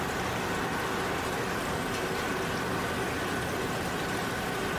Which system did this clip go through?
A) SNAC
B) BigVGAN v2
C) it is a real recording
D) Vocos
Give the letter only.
C